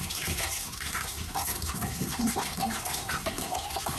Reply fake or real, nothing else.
fake